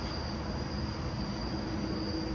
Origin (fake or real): real